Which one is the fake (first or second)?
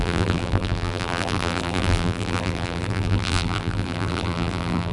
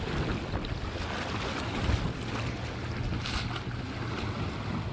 first